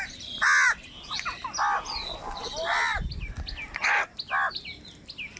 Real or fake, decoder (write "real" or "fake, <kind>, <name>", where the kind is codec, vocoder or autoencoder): real